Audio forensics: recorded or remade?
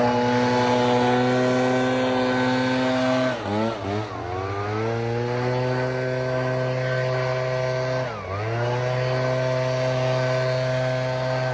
recorded